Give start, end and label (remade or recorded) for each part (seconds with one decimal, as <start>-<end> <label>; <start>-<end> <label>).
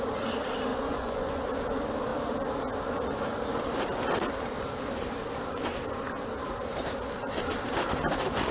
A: 0.0-0.7 recorded; 0.7-1.4 remade; 1.4-8.5 recorded